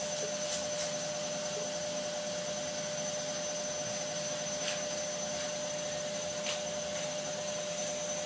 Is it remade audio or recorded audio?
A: recorded